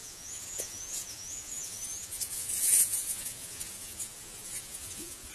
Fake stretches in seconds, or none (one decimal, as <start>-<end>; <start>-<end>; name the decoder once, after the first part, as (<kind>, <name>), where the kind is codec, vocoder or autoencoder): 0.0-5.3 (vocoder, Vocos)